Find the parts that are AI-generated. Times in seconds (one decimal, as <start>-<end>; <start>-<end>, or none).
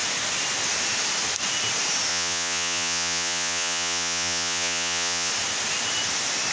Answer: 2.1-5.3